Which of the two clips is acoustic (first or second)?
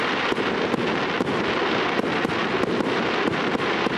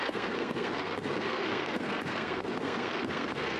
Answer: first